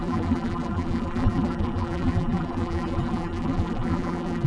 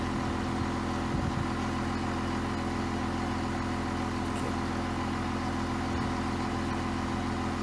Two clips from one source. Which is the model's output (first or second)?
first